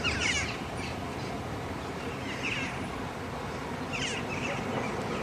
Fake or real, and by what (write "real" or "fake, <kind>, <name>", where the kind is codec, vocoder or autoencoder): fake, vocoder, BigVGAN v2